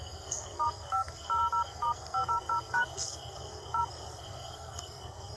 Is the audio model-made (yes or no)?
yes